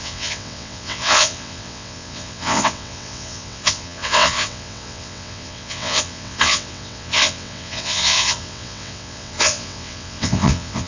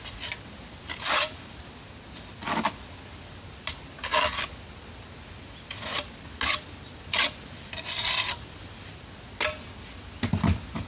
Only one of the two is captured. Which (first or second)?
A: second